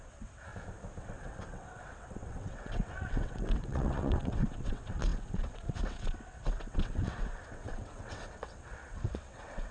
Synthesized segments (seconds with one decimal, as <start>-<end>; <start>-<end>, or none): 0.0-0.5; 1.0-9.7